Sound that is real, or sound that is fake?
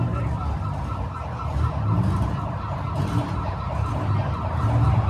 real